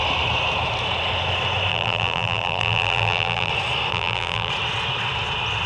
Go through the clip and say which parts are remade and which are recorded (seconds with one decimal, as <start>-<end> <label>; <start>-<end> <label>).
0.0-1.7 recorded; 1.7-3.5 remade; 3.5-3.9 recorded; 3.9-4.5 remade; 4.5-5.7 recorded